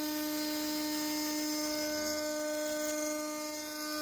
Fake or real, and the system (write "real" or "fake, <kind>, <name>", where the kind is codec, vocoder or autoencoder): real